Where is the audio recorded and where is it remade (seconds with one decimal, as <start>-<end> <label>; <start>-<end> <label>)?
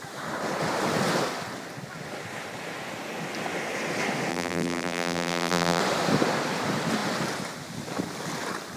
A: 0.0-4.3 recorded; 4.3-5.8 remade; 5.8-8.8 recorded